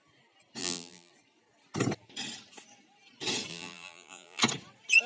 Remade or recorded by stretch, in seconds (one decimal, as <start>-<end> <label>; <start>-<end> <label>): 0.0-0.6 recorded; 0.6-1.1 remade; 1.1-3.5 recorded; 3.5-4.4 remade; 4.4-5.1 recorded